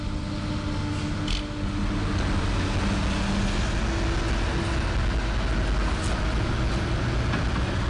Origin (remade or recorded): recorded